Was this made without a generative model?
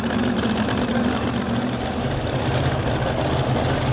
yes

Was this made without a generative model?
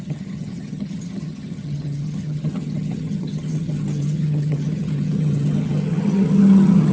no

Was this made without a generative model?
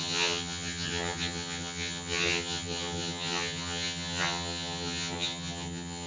no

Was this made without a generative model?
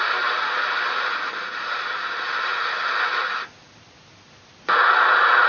yes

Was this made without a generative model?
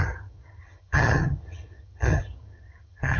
no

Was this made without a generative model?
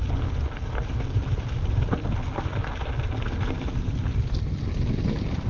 yes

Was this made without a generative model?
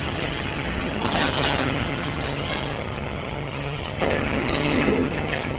no